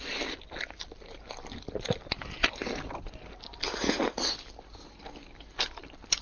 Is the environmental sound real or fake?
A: real